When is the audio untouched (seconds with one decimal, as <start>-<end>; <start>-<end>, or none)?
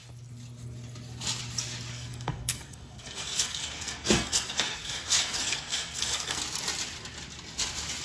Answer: 0.0-1.9; 6.4-8.0